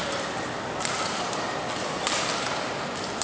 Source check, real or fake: real